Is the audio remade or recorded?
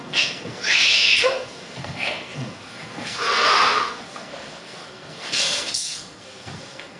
remade